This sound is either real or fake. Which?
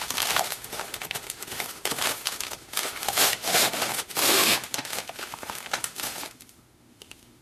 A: fake